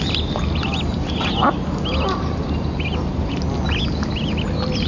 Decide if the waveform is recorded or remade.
recorded